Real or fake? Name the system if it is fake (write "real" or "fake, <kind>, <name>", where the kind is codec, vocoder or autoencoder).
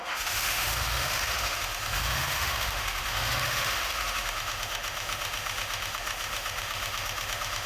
fake, autoencoder, DAC-VAE